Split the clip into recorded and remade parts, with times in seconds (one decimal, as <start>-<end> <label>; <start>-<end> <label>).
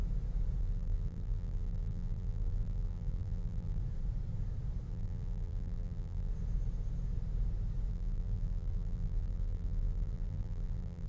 0.0-0.6 recorded; 0.6-3.8 remade; 3.8-4.9 recorded; 4.9-6.3 remade; 6.3-7.9 recorded; 7.9-11.1 remade